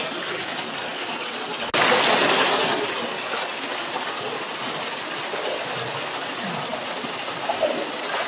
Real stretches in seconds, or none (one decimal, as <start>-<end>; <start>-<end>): 0.0-6.7; 7.2-8.3